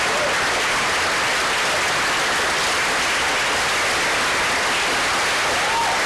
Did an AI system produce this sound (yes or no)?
no